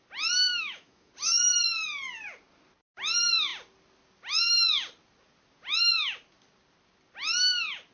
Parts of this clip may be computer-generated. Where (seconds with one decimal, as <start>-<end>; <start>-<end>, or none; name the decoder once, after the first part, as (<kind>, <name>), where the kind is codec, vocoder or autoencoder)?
0.5-1.1 (autoencoder, DAC-VAE)